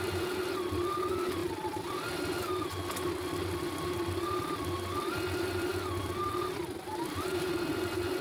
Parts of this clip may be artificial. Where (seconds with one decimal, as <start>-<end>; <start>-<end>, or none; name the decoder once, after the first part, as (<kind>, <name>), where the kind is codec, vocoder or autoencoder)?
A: none